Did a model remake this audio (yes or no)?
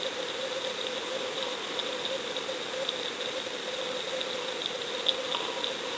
no